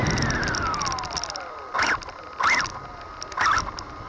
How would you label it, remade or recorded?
recorded